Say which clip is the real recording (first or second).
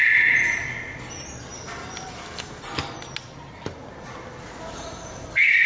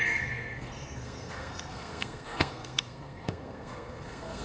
first